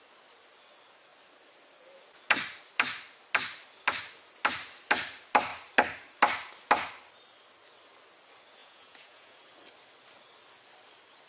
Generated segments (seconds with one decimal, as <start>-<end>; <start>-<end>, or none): 8.6-9.4